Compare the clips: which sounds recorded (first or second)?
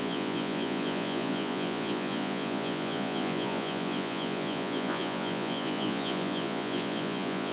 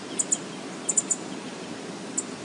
second